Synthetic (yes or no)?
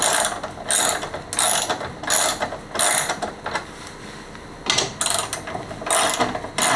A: no